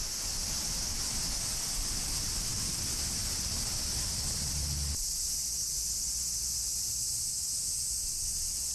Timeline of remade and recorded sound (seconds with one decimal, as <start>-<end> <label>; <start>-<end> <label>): 0.0-8.7 recorded

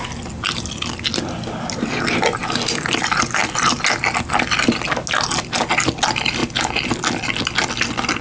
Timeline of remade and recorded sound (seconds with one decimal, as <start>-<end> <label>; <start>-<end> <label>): 0.0-8.2 recorded

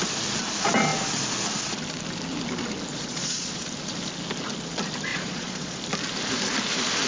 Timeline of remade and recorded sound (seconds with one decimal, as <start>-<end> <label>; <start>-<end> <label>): 0.0-2.9 recorded; 2.9-3.6 remade; 3.6-5.1 recorded; 5.1-5.8 remade; 5.8-7.1 recorded

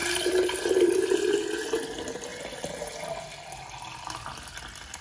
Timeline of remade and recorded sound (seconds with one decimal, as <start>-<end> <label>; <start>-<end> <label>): 0.0-5.0 recorded

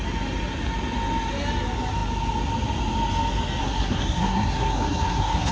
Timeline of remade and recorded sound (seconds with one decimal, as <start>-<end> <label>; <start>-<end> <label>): 0.0-3.6 recorded; 3.6-5.5 remade

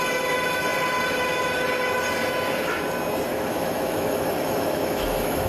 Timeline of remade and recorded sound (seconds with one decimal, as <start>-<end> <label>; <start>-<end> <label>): 0.0-3.3 recorded; 3.3-5.5 remade

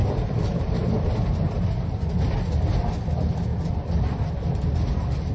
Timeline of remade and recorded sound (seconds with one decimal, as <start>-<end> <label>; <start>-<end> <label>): 0.0-0.9 remade; 0.9-3.5 recorded; 3.5-4.3 remade; 4.3-5.3 recorded

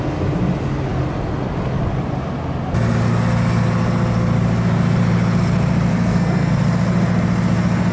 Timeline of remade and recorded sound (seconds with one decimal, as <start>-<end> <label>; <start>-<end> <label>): 0.0-5.9 recorded; 5.9-6.5 remade; 6.5-7.9 recorded